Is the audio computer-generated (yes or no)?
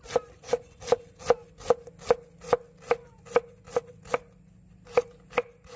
no